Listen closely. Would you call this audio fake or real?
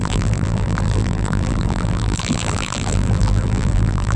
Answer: fake